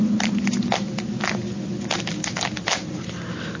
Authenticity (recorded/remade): recorded